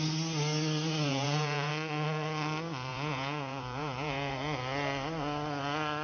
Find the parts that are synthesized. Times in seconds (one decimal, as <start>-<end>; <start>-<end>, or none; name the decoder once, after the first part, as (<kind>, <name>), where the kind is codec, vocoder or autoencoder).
1.1-1.7 (vocoder, Vocos); 2.9-4.3